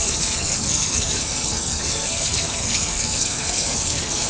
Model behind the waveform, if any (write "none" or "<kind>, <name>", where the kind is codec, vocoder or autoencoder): codec, SNAC